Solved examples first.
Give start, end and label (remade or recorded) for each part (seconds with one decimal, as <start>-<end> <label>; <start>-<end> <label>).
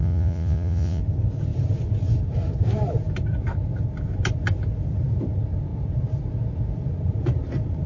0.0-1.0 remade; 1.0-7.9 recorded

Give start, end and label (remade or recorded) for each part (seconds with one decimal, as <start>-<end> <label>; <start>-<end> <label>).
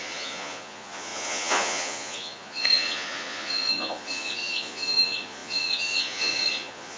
0.0-7.0 remade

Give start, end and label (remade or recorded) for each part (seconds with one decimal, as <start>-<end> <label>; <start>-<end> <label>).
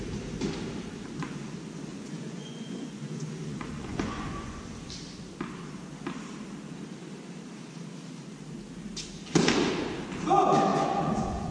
0.0-1.9 recorded; 1.9-4.6 remade; 4.6-10.7 recorded; 10.7-11.5 remade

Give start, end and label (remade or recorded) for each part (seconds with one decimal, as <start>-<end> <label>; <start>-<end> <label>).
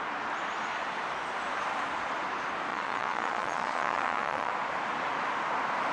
0.0-2.7 recorded; 2.7-4.5 remade; 4.5-5.9 recorded